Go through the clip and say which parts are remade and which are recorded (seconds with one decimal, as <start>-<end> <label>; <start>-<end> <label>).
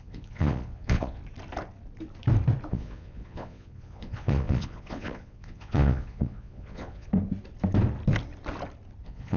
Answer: 0.0-1.2 remade; 1.2-2.7 recorded; 2.7-7.1 remade; 7.1-9.0 recorded; 9.0-9.4 remade